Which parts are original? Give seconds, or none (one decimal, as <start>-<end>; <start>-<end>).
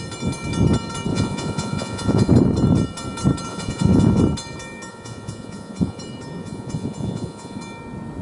0.0-1.1; 2.3-3.5; 4.2-4.9; 6.0-6.4; 7.6-8.2